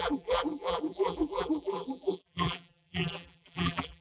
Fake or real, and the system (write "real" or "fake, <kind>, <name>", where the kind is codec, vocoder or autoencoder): fake, vocoder, BigVGAN v2